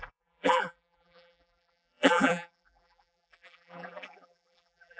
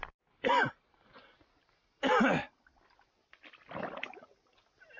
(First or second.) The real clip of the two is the second